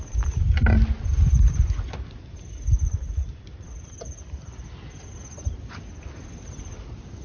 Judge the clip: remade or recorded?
recorded